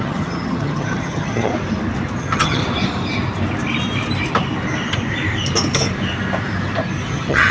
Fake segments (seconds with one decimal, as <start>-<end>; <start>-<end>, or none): 0.0-1.5; 2.2-2.6; 7.1-7.5